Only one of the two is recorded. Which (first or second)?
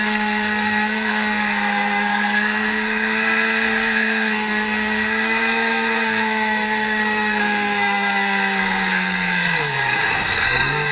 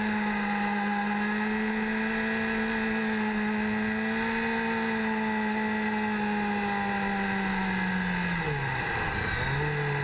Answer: second